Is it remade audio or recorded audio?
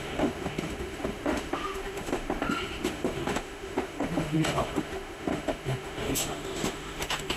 remade